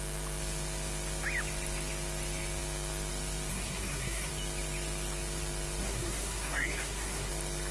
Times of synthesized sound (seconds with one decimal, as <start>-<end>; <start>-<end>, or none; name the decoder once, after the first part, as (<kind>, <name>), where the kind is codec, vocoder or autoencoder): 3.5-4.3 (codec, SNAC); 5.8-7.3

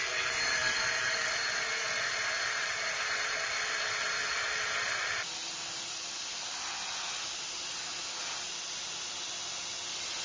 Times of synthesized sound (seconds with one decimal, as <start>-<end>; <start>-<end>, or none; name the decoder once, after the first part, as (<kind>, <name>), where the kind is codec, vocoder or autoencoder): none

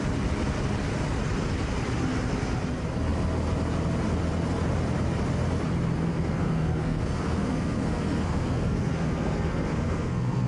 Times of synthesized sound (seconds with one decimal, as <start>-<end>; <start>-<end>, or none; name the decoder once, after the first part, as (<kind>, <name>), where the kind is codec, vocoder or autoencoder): 6.1-10.5 (codec, SNAC)

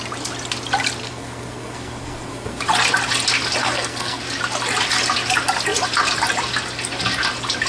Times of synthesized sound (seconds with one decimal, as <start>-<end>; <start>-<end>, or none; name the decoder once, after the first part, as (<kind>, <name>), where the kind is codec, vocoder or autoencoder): 1.0-2.6 (codec, SNAC); 3.6-4.2

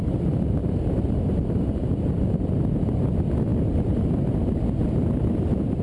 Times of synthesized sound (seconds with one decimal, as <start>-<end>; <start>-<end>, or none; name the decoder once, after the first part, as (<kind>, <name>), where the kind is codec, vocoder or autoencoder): none

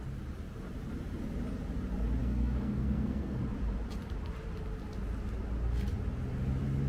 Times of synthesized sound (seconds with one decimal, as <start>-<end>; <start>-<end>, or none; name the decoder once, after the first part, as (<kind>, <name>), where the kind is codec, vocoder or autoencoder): 2.2-3.4 (codec, SNAC)

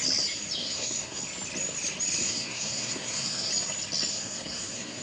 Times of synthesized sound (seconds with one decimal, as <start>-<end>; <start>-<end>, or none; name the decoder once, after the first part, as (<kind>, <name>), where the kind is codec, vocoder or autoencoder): 0.6-1.2 (codec, SNAC); 2.2-3.5; 4.1-5.0

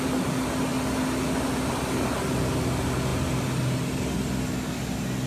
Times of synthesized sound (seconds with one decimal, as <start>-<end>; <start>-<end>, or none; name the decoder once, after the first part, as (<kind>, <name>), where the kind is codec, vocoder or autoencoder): none